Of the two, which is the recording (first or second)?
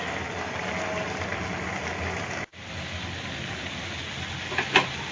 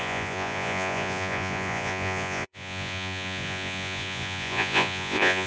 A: first